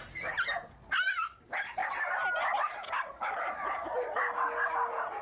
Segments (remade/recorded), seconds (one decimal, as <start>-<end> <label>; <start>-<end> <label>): 0.0-5.2 recorded